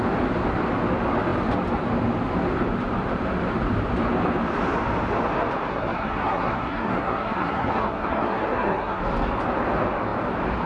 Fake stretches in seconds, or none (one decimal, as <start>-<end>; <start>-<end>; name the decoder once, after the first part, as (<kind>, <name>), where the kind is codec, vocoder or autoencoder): 5.7-9.0 (codec, SNAC)